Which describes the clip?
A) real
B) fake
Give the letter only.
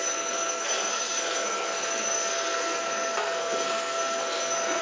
B